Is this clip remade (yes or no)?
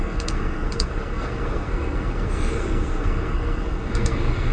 yes